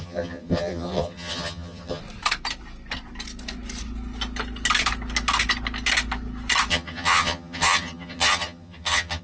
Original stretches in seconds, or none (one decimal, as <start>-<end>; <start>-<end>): 2.0-6.7